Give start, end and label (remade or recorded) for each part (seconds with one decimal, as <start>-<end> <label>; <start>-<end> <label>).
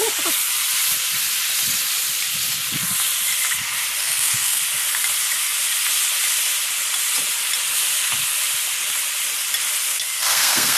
0.0-4.0 recorded; 4.0-4.6 remade; 4.6-9.9 recorded; 9.9-10.8 remade